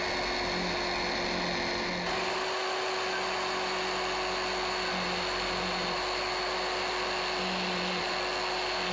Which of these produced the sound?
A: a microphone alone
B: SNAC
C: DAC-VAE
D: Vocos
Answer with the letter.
A